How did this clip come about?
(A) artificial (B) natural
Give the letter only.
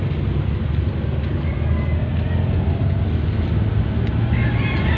B